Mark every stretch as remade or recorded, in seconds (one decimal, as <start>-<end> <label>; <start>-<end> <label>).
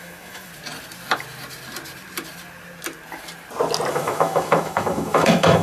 0.0-0.5 remade; 0.5-3.9 recorded; 3.9-5.6 remade